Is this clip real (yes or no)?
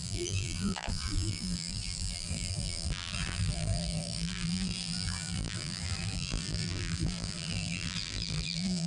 no